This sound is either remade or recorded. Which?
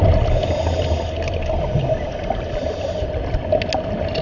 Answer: recorded